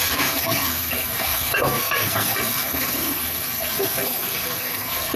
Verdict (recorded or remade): remade